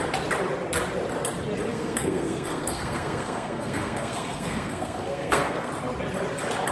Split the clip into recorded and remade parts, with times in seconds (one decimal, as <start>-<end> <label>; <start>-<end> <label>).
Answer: 0.0-1.7 recorded; 1.7-5.7 remade; 5.7-6.7 recorded